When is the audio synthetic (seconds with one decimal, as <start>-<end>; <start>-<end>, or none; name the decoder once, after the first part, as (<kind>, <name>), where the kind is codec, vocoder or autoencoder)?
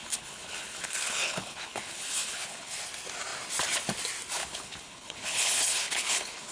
0.0-2.8 (codec, HILCodec); 4.4-6.5